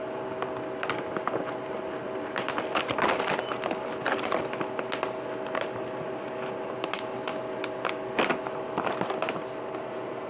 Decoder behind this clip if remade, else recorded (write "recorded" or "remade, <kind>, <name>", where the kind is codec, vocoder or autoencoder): recorded